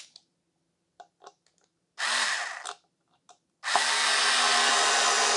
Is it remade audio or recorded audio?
recorded